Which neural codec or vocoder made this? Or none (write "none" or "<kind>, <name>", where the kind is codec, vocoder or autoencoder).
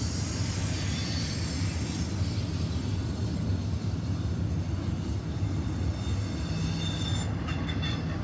none